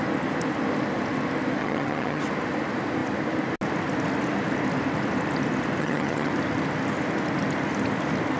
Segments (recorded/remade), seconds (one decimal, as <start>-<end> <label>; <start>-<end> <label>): 0.0-1.6 recorded; 1.6-2.2 remade; 2.2-5.8 recorded; 5.8-6.3 remade; 6.3-8.4 recorded